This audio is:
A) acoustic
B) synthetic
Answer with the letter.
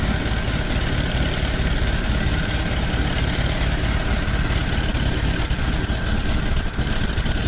A